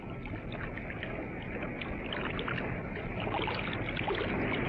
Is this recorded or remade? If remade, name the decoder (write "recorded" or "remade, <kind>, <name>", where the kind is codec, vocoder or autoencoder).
recorded